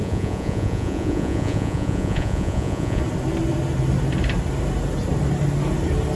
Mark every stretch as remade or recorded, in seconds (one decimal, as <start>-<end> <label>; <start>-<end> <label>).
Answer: 0.0-3.0 remade; 3.0-6.2 recorded